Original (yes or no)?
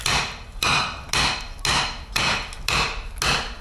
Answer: yes